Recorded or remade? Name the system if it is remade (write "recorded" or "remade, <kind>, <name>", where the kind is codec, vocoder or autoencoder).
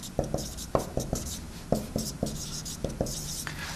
remade, vocoder, BigVGAN v2